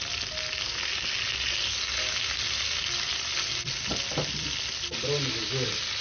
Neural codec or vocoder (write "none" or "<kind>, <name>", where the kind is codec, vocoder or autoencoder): none